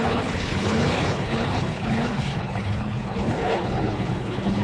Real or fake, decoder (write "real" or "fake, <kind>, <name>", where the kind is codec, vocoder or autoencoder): fake, codec, HILCodec